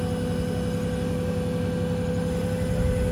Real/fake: real